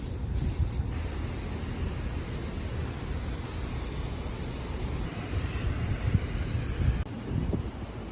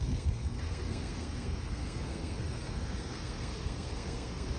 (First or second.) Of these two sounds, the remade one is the second